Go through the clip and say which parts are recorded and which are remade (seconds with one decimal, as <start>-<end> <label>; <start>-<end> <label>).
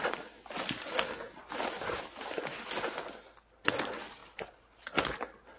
0.0-5.6 recorded